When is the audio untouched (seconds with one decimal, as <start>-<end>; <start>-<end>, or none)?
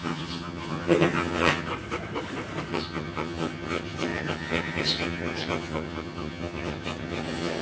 1.7-2.7